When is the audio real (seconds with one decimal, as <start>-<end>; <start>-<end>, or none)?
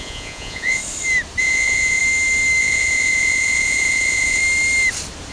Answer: 0.8-1.4; 2.0-2.6; 4.4-5.3